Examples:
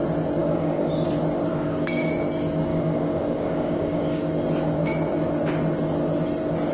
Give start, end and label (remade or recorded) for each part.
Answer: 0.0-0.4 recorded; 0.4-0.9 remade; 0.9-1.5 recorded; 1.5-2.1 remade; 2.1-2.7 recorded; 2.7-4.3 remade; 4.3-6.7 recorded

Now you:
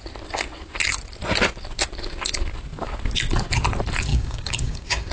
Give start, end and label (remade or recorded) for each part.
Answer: 0.0-4.1 recorded; 4.1-5.1 remade